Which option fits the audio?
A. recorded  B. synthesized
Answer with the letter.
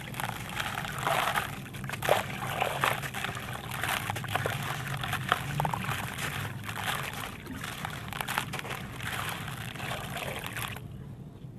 A